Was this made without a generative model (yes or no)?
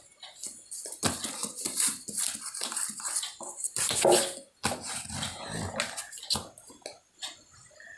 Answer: yes